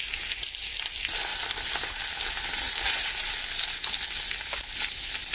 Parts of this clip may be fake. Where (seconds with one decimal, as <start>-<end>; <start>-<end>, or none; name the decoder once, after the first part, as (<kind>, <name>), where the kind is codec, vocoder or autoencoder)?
none